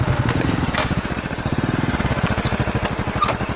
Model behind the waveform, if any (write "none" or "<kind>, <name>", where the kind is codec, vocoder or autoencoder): none